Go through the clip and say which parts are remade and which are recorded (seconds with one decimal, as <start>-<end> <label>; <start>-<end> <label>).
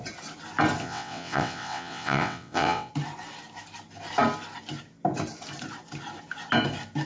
0.0-0.8 recorded; 0.8-2.9 remade; 2.9-7.1 recorded